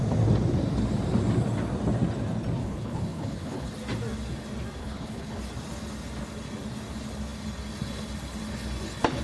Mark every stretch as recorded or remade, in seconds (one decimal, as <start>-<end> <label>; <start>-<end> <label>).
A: 0.0-2.6 recorded; 2.6-3.7 remade; 3.7-4.8 recorded; 4.8-5.4 remade; 5.4-9.2 recorded